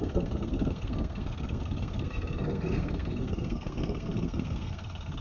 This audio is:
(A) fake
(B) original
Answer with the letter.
A